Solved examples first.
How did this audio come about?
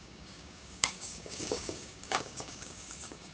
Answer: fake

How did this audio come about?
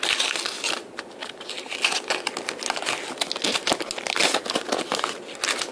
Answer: real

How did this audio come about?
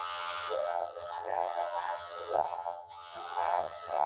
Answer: fake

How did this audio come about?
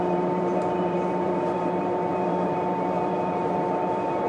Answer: fake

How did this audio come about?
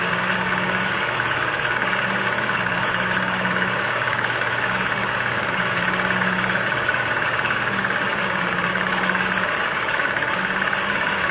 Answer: fake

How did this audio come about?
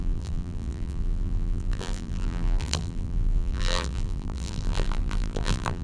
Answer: fake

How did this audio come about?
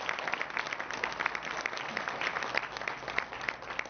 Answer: real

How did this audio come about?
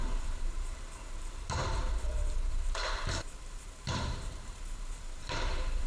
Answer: fake